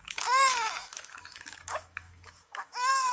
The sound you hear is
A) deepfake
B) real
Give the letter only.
A